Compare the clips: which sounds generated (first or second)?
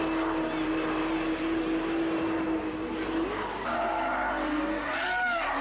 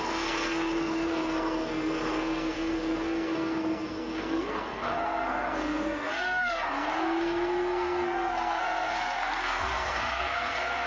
second